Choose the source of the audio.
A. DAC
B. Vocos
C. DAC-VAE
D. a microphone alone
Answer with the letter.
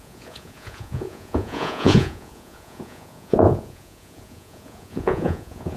B